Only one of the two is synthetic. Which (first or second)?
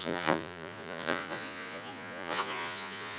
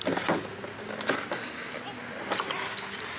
first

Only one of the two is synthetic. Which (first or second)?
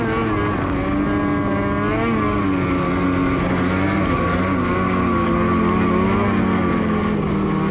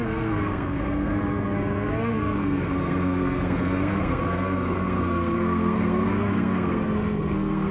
second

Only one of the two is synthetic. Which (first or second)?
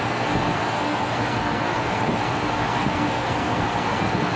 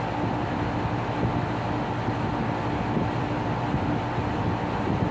first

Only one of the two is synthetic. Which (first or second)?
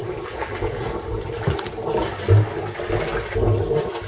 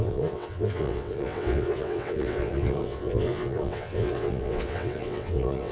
second